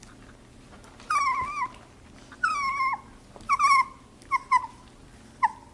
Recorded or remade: recorded